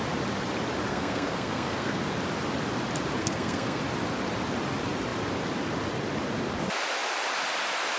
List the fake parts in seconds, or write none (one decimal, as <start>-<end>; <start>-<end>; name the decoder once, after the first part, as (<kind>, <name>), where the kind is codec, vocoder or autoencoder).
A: 0.9-2.1 (codec, SNAC); 3.2-3.8